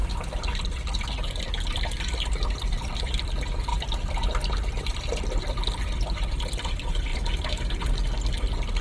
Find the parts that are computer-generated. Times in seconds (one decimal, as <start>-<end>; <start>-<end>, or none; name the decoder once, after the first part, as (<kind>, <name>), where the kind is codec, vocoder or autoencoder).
none